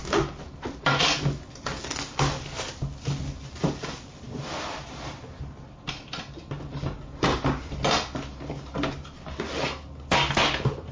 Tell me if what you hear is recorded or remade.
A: recorded